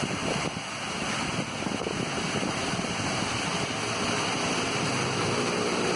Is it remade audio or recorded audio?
recorded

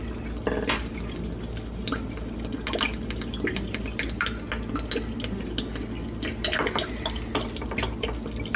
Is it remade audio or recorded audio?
recorded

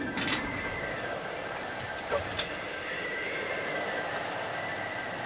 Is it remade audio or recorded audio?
recorded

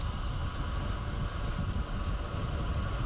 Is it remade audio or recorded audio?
recorded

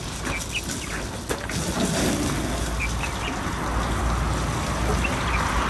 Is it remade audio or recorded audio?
recorded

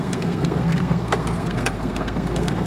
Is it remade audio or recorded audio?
remade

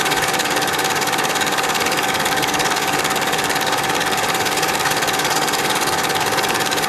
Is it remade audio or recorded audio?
remade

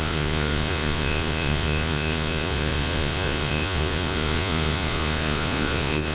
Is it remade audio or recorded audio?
remade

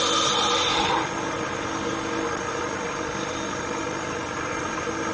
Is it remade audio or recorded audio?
recorded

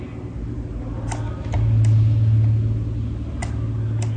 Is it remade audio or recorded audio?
recorded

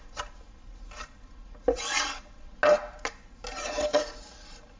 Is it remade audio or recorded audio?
recorded